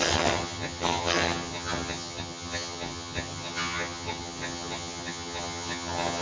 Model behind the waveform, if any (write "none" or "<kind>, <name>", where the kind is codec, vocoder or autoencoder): vocoder, HiFi-GAN